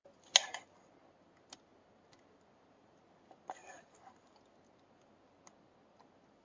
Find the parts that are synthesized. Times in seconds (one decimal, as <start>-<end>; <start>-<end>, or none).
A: none